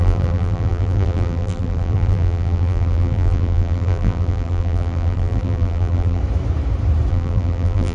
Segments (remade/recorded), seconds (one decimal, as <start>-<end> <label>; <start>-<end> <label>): 0.0-6.2 remade; 6.2-7.1 recorded; 7.1-7.9 remade